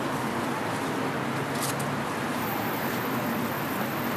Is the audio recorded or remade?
recorded